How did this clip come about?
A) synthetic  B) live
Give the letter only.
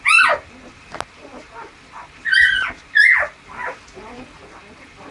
B